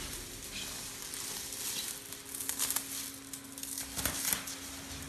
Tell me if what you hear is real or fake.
real